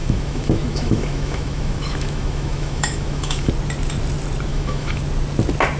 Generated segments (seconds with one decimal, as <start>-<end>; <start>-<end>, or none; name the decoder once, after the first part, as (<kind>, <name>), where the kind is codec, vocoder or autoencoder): 0.0-3.5 (autoencoder, DAC-VAE); 4.5-5.0